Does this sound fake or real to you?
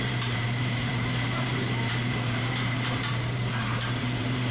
fake